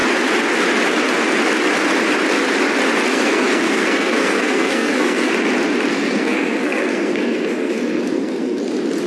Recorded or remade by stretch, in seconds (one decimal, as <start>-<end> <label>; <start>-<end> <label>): 0.0-3.1 recorded; 3.1-5.3 remade; 5.3-5.9 recorded; 5.9-8.6 remade; 8.6-9.1 recorded